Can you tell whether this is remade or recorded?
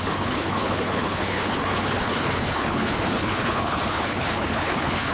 remade